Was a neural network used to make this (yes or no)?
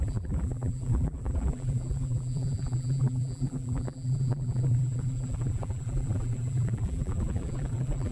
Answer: yes